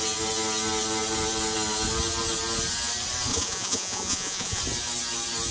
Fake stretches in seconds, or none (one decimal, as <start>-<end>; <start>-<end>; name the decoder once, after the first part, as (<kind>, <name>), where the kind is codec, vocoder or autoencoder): 3.3-4.6 (vocoder, Vocos)

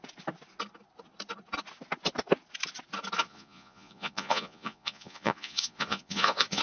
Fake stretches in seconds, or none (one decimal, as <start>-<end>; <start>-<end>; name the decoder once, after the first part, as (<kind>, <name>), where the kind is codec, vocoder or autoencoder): 3.2-6.6 (vocoder, Vocos)

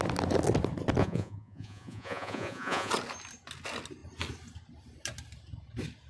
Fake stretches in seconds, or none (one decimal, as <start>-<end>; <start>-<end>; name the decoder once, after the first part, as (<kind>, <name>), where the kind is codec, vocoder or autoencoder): 1.0-2.9 (vocoder, Vocos)

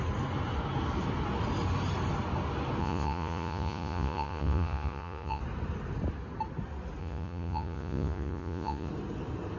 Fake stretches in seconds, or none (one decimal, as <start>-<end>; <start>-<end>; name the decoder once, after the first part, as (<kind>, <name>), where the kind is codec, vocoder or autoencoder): 2.8-5.4 (vocoder, Vocos); 7.0-8.9

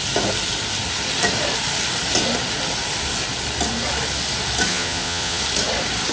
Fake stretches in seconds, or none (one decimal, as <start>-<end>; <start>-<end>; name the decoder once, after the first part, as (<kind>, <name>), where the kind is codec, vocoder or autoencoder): 4.7-5.4 (vocoder, Vocos)

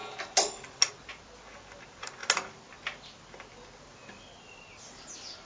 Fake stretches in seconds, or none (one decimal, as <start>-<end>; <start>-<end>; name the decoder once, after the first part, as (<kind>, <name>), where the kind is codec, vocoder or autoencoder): none

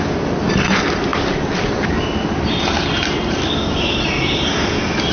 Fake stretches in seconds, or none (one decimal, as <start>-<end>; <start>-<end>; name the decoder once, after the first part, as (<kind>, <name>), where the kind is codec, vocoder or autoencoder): none